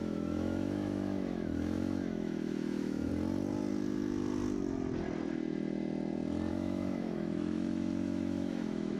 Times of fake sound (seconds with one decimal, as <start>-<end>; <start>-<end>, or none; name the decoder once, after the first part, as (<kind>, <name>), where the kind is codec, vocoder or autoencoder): 0.0-3.1 (autoencoder, DAC-VAE); 6.5-9.0